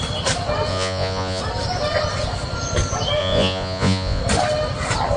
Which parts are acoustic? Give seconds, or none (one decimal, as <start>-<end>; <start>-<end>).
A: 0.0-0.7; 1.4-3.2; 4.2-5.2